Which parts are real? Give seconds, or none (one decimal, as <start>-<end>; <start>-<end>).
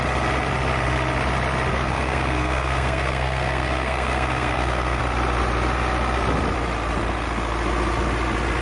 0.0-1.7; 5.0-8.6